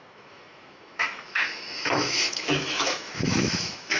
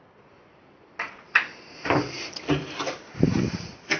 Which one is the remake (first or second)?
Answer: first